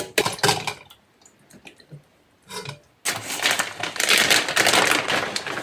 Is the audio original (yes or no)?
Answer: yes